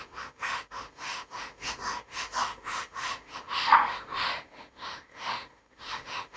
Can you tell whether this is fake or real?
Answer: fake